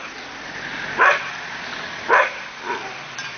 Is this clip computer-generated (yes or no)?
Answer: no